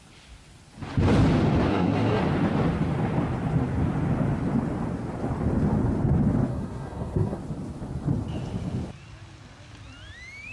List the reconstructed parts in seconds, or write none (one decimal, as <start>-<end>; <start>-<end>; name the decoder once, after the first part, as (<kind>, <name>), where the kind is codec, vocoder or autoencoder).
1.7-2.2 (codec, SNAC); 6.5-7.4